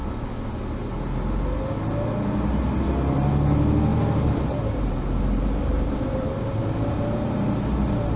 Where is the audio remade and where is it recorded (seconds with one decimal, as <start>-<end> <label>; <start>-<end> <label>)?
0.0-3.9 recorded; 3.9-7.0 remade; 7.0-8.2 recorded